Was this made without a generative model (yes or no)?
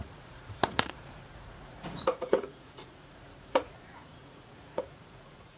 no